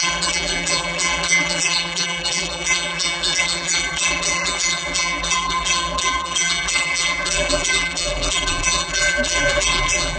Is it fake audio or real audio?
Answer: fake